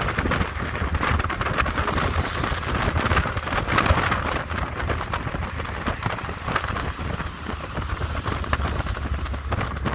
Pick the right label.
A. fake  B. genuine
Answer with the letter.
B